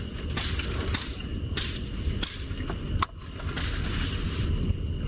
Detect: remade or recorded recorded